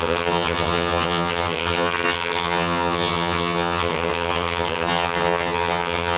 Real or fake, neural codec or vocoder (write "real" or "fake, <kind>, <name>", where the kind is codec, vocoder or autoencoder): fake, vocoder, HiFi-GAN